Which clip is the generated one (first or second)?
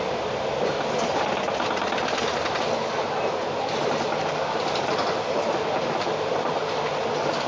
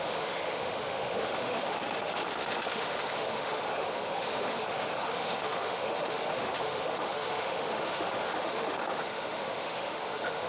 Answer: second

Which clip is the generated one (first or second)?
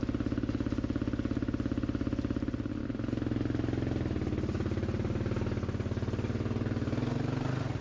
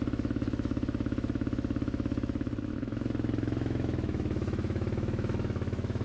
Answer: second